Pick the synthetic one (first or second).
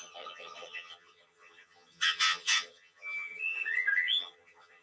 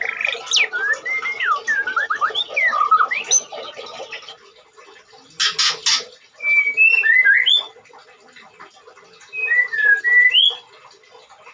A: first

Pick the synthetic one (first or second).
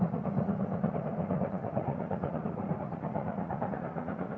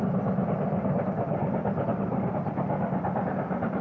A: first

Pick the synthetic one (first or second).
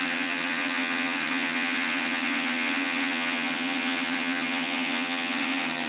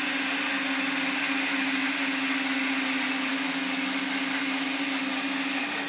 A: first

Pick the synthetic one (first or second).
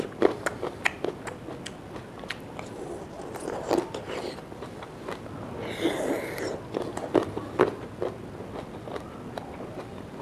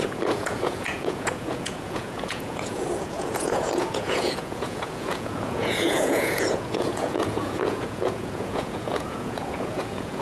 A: second